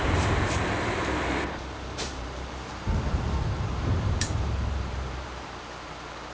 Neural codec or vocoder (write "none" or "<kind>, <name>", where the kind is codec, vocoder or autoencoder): vocoder, BigVGAN v2